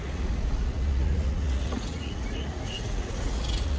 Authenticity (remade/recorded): remade